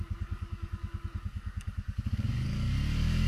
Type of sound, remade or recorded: remade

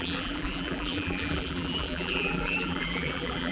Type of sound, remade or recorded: remade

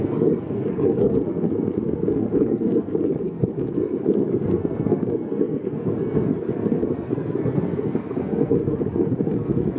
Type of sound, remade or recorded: remade